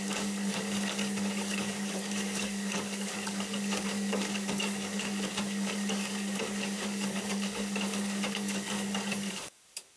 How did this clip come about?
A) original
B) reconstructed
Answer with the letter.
B